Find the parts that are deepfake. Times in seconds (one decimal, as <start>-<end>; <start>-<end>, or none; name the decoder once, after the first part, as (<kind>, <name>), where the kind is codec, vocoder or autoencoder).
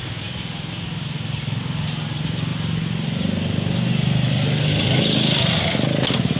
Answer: none